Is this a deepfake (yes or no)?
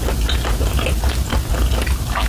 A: no